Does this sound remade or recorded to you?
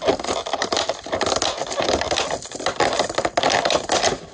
recorded